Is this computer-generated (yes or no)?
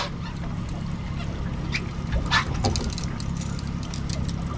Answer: no